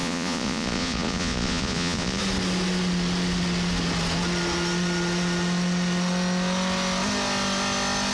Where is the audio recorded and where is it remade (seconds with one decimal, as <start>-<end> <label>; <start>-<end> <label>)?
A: 0.0-2.2 remade; 2.2-8.1 recorded